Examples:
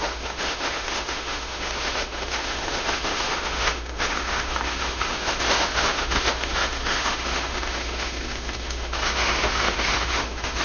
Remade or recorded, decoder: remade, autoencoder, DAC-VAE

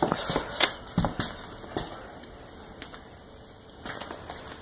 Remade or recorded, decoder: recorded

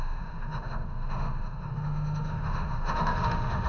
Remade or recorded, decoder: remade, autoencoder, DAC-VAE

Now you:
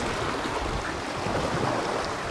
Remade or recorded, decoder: recorded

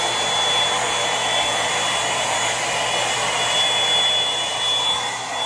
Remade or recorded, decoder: recorded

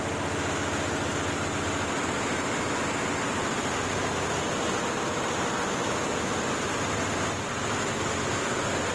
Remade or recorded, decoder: recorded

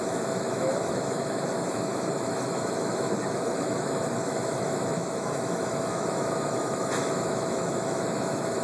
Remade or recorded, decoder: remade, autoencoder, DAC-VAE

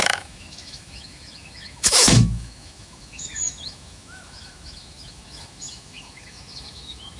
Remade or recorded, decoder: remade, autoencoder, DAC-VAE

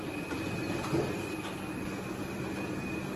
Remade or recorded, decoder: recorded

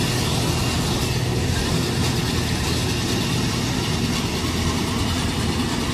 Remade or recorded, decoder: recorded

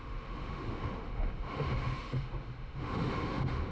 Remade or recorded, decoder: remade, autoencoder, DAC-VAE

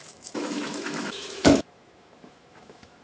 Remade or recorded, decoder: remade, autoencoder, DAC-VAE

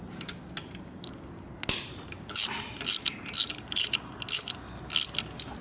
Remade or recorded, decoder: recorded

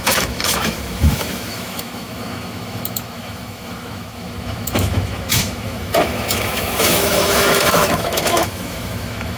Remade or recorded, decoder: remade, autoencoder, DAC-VAE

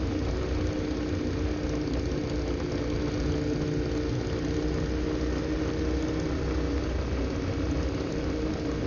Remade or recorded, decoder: recorded